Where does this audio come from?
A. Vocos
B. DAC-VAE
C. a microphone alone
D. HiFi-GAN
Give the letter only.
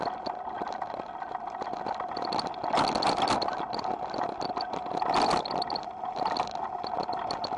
C